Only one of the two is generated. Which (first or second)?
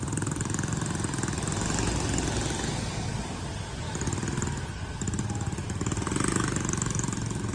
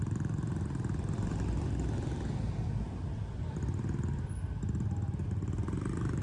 second